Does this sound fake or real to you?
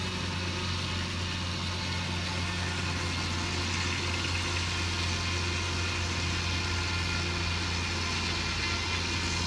real